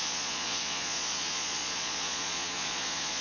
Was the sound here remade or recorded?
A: remade